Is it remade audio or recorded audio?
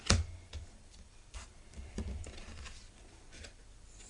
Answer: remade